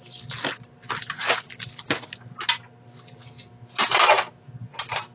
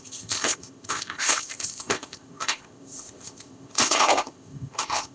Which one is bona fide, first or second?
first